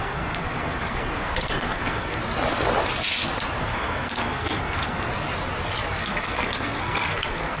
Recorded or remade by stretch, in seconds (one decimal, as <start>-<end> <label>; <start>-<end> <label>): 0.0-2.2 remade; 2.2-3.6 recorded; 3.6-5.1 remade; 5.1-6.0 recorded; 6.0-7.6 remade